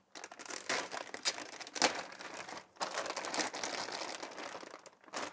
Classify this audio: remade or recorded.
recorded